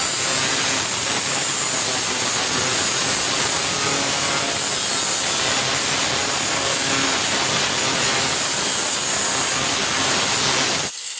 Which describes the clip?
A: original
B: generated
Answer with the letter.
A